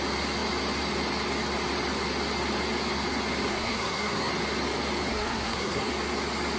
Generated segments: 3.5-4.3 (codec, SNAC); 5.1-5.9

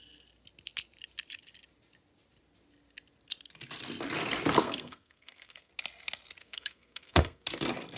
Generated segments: 4.6-5.7 (codec, SNAC); 6.4-7.4

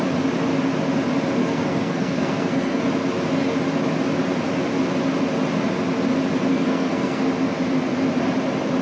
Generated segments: 1.4-2.8 (codec, SNAC); 6.5-7.2

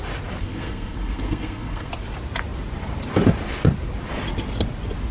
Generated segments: 0.4-1.9 (codec, SNAC)

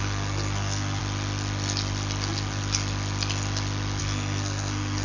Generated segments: 0.0-1.0 (codec, SNAC); 4.0-5.0

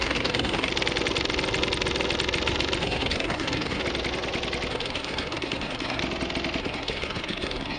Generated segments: 0.0-0.7 (codec, SNAC); 2.8-3.8; 4.7-6.0; 6.6-7.8

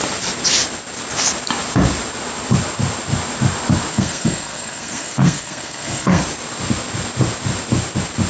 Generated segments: 3.9-6.2 (codec, SNAC)

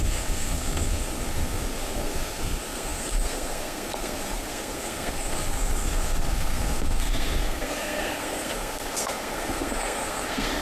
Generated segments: 0.0-10.6 (codec, SNAC)